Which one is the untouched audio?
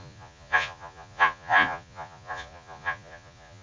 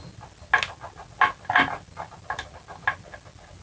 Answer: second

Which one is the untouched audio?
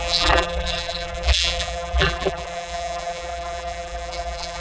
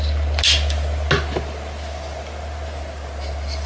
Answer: second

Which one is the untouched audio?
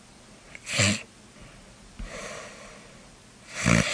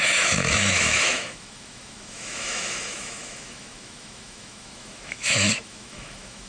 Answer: first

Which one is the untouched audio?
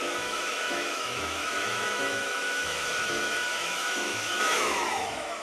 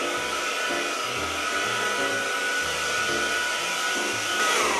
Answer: second